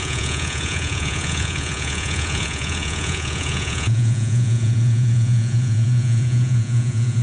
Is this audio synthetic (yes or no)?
yes